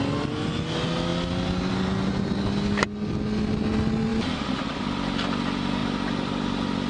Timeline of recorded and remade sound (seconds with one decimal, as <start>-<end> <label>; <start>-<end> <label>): 0.0-5.8 recorded; 5.8-6.9 remade

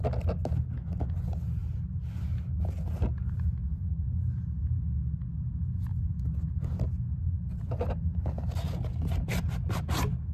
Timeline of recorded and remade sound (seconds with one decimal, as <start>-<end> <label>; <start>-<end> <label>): 0.0-1.6 recorded; 1.6-2.6 remade; 2.6-5.9 recorded; 5.9-6.5 remade; 6.5-10.3 recorded

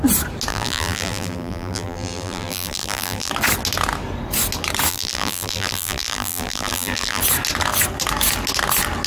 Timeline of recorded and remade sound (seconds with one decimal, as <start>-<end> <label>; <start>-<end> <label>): 0.0-0.5 recorded; 0.5-3.3 remade; 3.3-4.9 recorded; 4.9-7.2 remade; 7.2-9.1 recorded

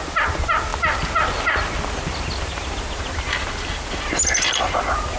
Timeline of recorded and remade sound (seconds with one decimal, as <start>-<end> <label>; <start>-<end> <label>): 0.0-5.2 recorded